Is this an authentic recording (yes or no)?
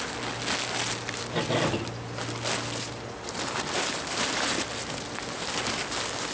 yes